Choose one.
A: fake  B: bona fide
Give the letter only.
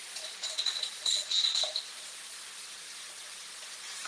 A